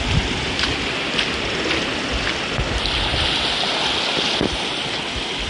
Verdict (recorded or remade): recorded